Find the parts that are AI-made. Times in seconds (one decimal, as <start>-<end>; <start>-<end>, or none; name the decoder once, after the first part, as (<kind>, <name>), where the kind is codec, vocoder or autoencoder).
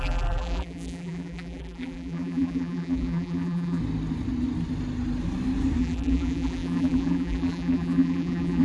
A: 0.0-3.8 (vocoder, BigVGAN v2); 5.8-8.6